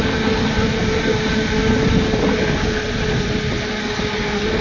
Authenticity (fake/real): real